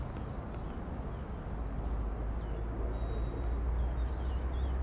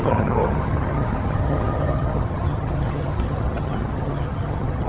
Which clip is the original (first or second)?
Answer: first